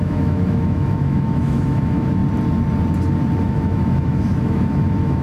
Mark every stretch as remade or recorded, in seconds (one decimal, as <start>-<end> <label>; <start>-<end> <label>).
0.0-2.2 remade; 2.2-3.4 recorded; 3.4-5.2 remade